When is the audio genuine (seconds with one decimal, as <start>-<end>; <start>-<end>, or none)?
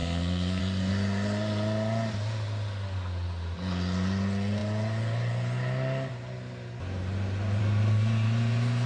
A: 0.6-8.9